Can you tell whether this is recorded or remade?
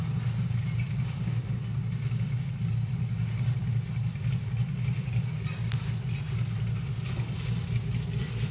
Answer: recorded